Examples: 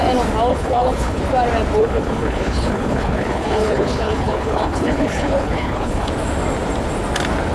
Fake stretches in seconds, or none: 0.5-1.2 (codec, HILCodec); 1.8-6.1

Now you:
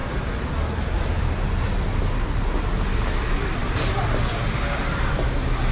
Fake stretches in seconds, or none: none

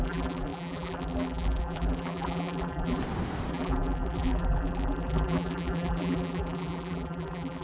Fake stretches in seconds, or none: 0.0-3.0 (vocoder, BigVGAN v2); 3.5-7.6

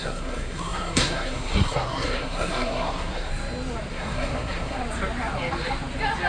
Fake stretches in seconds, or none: 0.0-3.3 (codec, SNAC); 3.9-4.8

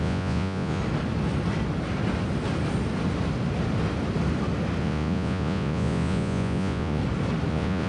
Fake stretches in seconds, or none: 0.0-0.8 (vocoder, Vocos); 4.8-7.0; 7.5-7.9

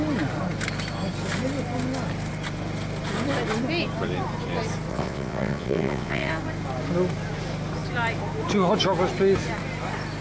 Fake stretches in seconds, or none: 4.9-6.3 (vocoder, WaveNeXt)

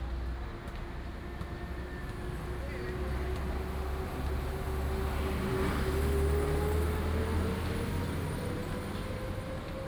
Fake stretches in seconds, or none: none

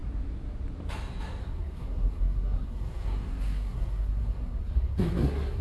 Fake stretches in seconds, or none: 1.4-5.6 (codec, SNAC)